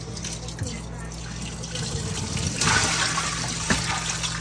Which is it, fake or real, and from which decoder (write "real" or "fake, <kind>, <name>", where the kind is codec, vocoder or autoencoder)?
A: real